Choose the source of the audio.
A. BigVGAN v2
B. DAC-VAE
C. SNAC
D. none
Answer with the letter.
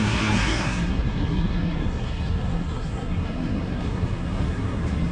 C